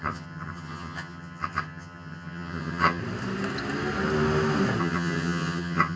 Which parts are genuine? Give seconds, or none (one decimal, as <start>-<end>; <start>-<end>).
3.0-4.8